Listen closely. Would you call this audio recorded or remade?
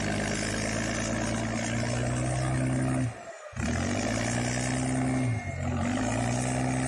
recorded